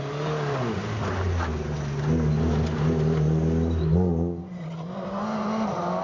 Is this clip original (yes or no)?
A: yes